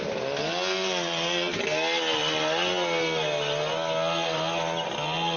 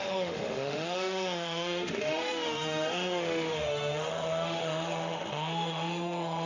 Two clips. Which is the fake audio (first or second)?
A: second